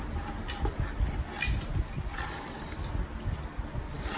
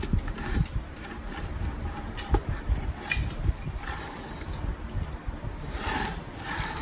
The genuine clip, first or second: first